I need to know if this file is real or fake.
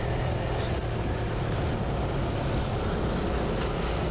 real